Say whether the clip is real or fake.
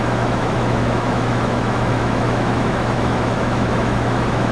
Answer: fake